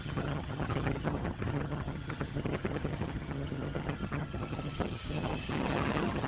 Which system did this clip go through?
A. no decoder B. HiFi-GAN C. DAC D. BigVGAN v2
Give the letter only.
B